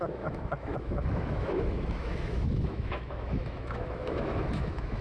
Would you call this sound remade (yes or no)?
yes